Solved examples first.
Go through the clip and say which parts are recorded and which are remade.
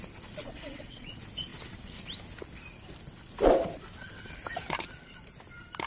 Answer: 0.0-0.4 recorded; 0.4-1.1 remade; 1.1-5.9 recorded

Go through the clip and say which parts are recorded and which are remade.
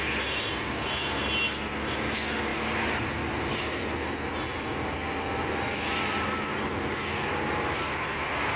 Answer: 0.0-8.6 recorded